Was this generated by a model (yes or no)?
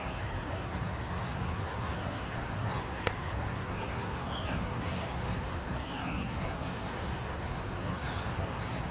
yes